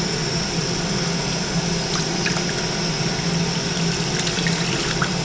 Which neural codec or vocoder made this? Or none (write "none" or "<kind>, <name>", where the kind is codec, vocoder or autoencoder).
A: none